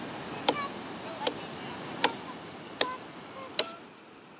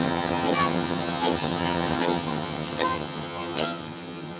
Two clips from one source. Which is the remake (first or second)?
second